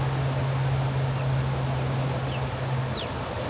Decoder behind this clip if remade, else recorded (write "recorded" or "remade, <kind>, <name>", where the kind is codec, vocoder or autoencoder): recorded